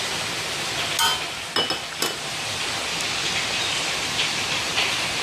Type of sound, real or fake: real